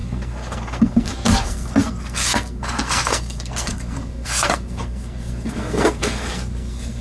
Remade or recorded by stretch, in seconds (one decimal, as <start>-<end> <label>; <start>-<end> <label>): 0.0-7.0 remade

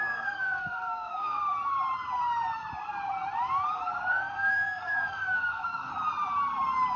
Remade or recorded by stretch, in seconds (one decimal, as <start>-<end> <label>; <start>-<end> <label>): 0.0-1.4 remade; 1.4-4.1 recorded; 4.1-5.9 remade; 5.9-7.0 recorded

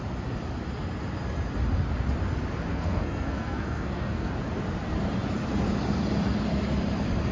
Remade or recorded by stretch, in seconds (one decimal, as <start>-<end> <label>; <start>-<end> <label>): 0.0-2.7 recorded; 2.7-4.3 remade; 4.3-7.3 recorded